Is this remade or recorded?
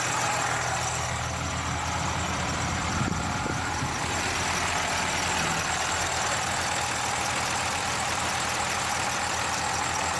recorded